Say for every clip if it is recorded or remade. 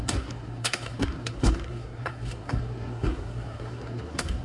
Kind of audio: remade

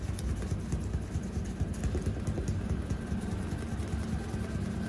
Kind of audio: recorded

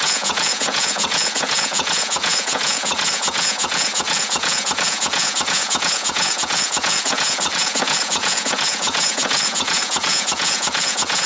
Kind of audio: remade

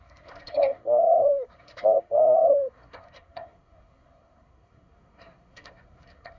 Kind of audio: remade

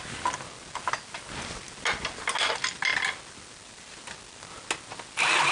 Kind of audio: recorded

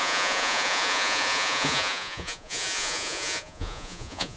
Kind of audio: remade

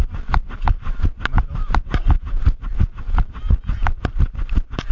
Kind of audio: recorded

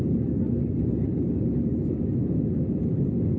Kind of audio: recorded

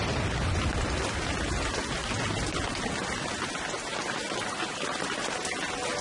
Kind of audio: recorded